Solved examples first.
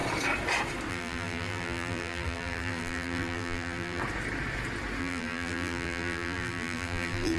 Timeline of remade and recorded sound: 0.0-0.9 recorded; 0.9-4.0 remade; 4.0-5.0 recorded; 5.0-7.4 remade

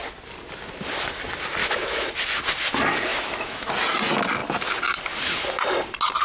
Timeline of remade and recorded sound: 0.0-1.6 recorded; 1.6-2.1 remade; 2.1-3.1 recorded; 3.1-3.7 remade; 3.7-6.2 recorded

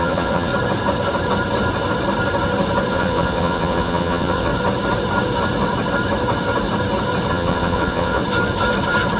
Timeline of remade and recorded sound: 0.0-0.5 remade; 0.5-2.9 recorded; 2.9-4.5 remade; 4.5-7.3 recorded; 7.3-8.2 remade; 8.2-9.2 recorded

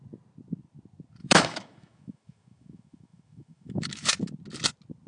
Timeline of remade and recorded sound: 0.0-1.2 recorded; 1.2-4.3 remade; 4.3-5.1 recorded

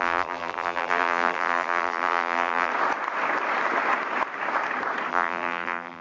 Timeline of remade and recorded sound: 0.0-2.7 remade; 2.7-5.1 recorded; 5.1-6.0 remade

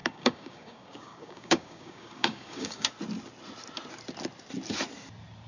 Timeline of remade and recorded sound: 0.0-2.9 remade; 2.9-5.5 recorded

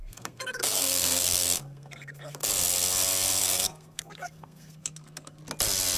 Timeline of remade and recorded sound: 0.0-2.4 remade; 2.4-3.4 recorded; 3.4-5.4 remade; 5.4-6.0 recorded

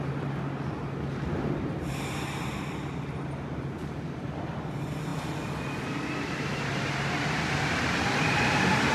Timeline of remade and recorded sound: 0.0-3.8 recorded; 3.8-4.4 remade; 4.4-8.9 recorded